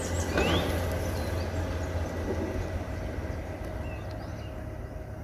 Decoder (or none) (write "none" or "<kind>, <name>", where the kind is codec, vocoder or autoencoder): none